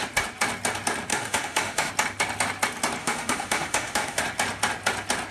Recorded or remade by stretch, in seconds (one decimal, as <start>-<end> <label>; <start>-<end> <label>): 0.0-1.1 recorded; 1.1-1.9 remade; 1.9-3.0 recorded; 3.0-4.2 remade; 4.2-5.3 recorded

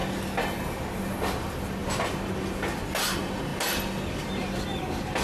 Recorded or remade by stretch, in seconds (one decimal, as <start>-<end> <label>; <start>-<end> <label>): 0.0-5.2 recorded

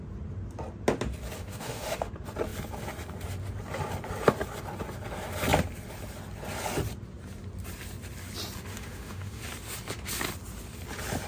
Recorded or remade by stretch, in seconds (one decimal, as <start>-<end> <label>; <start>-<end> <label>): 0.0-1.4 recorded; 1.4-2.1 remade; 2.1-8.7 recorded; 8.7-9.4 remade; 9.4-11.3 recorded

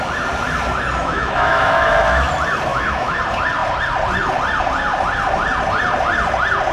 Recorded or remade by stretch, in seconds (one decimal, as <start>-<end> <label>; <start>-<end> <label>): 0.0-1.0 recorded; 1.0-2.3 remade; 2.3-2.7 recorded; 2.7-3.2 remade; 3.2-6.7 recorded

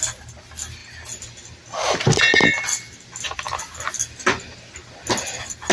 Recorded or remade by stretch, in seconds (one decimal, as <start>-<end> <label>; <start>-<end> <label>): 0.0-5.7 recorded

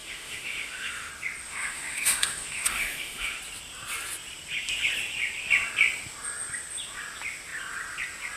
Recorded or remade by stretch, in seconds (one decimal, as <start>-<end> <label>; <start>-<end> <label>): 0.0-1.1 remade; 1.1-1.5 recorded; 1.5-3.4 remade; 3.4-8.4 recorded

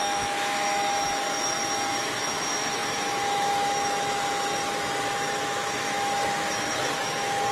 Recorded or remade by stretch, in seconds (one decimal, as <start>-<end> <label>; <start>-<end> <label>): 0.0-7.5 remade